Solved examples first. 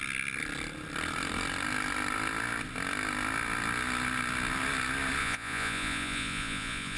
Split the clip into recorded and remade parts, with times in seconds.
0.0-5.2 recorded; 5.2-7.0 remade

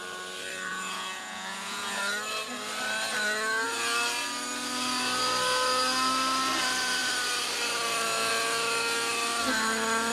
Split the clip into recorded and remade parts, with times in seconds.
0.0-0.7 recorded; 0.7-2.0 remade; 2.0-10.1 recorded

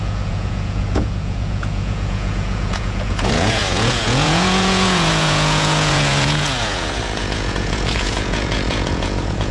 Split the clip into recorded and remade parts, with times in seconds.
0.0-9.5 remade

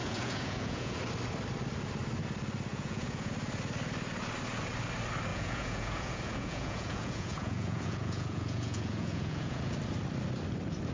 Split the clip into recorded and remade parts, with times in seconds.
0.0-1.0 remade; 1.0-2.7 recorded; 2.7-3.3 remade; 3.3-5.3 recorded; 5.3-9.7 remade; 9.7-10.9 recorded

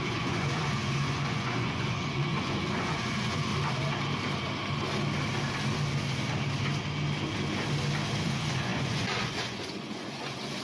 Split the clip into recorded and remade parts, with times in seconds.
0.0-3.5 remade; 3.5-8.2 recorded; 8.2-10.6 remade

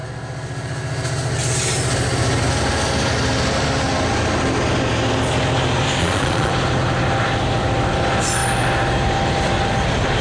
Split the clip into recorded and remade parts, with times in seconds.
0.0-6.0 recorded; 6.0-6.5 remade; 6.5-10.2 recorded

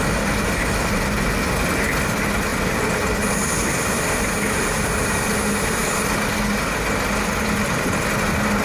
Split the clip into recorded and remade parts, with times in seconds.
0.0-8.6 recorded

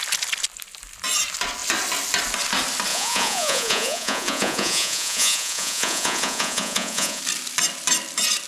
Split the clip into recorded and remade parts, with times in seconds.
0.0-2.9 recorded; 2.9-7.2 remade; 7.2-8.5 recorded